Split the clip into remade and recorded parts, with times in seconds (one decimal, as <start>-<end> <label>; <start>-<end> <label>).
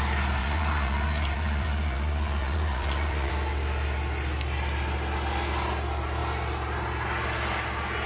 0.0-0.4 recorded; 0.4-3.3 remade; 3.3-8.1 recorded